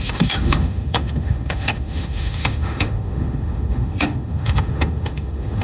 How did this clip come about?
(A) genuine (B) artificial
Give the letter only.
B